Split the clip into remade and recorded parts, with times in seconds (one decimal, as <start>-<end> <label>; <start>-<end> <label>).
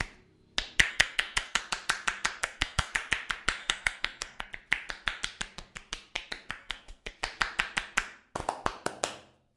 0.0-0.9 recorded; 0.9-1.6 remade; 1.6-2.4 recorded; 2.4-2.9 remade; 2.9-3.6 recorded; 3.6-4.5 remade; 4.5-6.6 recorded; 6.6-7.1 remade; 7.1-9.6 recorded